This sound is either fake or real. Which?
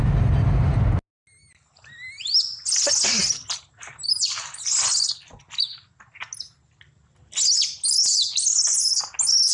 real